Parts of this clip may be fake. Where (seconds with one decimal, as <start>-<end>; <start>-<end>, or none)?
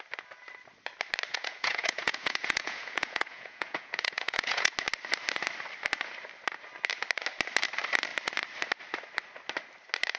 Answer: 1.3-4.7